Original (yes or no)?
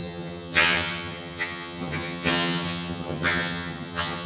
no